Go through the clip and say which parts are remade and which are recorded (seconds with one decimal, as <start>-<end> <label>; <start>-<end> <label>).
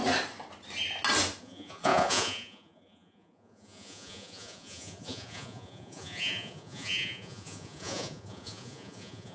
0.0-1.4 recorded; 1.4-9.3 remade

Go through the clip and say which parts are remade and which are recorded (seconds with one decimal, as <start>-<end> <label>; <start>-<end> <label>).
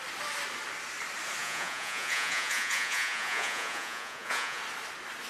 0.0-1.4 recorded; 1.4-4.6 remade; 4.6-5.3 recorded